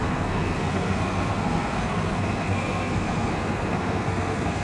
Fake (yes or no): yes